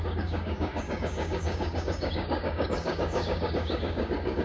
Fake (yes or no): yes